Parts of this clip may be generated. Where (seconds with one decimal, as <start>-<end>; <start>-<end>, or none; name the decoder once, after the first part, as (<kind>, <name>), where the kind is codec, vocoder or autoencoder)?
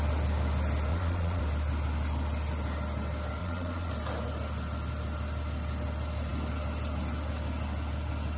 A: 0.9-1.4 (vocoder, Vocos); 3.4-3.9